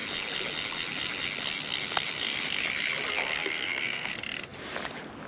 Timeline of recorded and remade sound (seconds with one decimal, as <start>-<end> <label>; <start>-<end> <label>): 0.0-3.1 recorded; 3.1-4.1 remade; 4.1-5.3 recorded